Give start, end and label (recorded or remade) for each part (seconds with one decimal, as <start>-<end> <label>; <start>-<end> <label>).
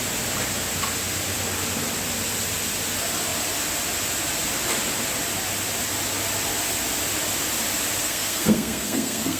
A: 0.0-8.0 recorded; 8.0-9.4 remade